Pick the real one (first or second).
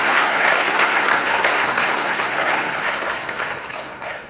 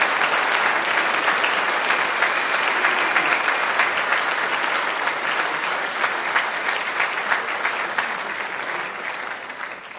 second